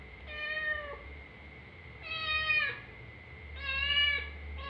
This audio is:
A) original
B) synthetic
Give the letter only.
A